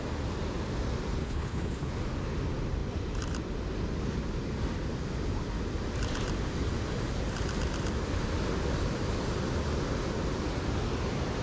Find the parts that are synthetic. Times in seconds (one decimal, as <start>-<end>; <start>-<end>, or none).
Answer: 1.2-1.9